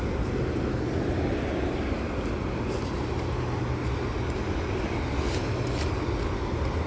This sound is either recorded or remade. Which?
recorded